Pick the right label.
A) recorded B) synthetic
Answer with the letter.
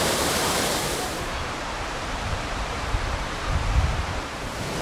B